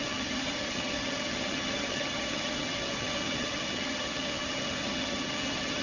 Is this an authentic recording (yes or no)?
no